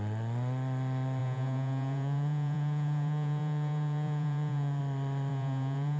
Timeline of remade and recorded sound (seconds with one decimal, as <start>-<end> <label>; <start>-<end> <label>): 0.0-1.2 recorded; 1.2-4.8 remade; 4.8-5.3 recorded; 5.3-6.0 remade